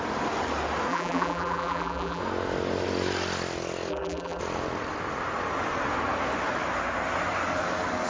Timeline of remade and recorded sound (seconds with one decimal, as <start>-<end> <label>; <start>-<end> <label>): 0.0-0.9 recorded; 0.9-2.2 remade; 2.2-3.9 recorded; 3.9-4.4 remade; 4.4-8.1 recorded